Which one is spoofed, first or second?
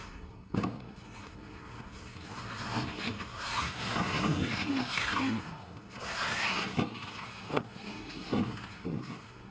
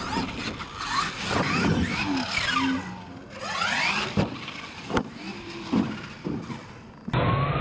first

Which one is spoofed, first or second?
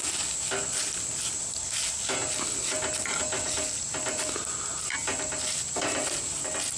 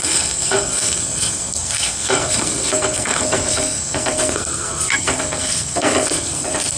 second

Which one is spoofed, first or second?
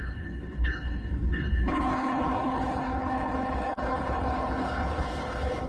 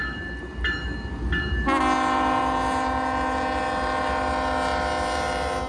first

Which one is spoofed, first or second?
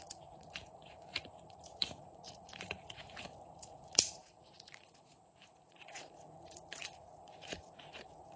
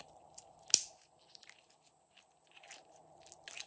first